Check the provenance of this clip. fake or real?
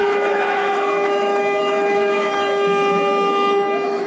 fake